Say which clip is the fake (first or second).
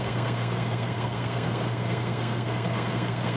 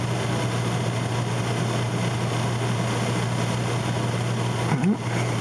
first